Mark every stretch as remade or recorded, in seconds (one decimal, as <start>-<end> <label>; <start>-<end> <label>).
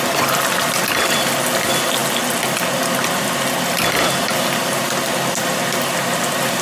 0.0-6.6 recorded